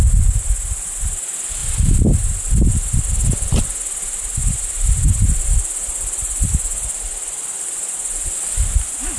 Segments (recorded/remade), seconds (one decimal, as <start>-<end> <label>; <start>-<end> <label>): 0.0-5.8 recorded; 5.8-6.5 remade; 6.5-9.2 recorded